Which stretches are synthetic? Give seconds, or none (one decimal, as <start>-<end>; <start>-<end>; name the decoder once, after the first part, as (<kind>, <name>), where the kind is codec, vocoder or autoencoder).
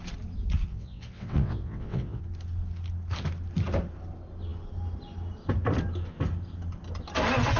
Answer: 0.7-2.2 (vocoder, WaveNeXt)